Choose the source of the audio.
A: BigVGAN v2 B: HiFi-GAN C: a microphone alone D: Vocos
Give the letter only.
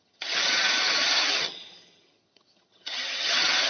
B